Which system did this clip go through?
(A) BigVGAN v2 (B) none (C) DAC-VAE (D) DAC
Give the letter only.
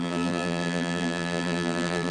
A